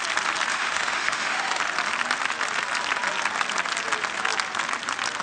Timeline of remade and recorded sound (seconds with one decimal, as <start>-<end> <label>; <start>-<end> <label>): 0.0-0.5 recorded; 0.5-1.6 remade; 1.6-5.2 recorded